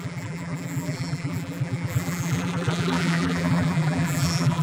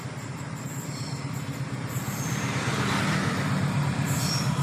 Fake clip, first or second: first